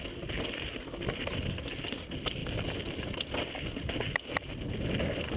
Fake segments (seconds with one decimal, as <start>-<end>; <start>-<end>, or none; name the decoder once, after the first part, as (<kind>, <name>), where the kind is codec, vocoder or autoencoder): none